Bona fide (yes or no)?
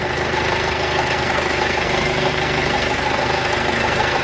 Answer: no